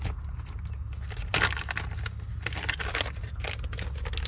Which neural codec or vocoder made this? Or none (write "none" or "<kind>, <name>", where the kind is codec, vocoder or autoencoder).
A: none